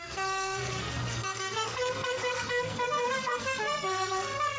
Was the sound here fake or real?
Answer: fake